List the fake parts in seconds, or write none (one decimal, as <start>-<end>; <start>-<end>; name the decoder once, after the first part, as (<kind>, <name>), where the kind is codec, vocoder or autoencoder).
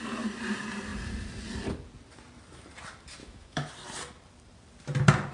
3.2-3.7 (autoencoder, DAC-VAE)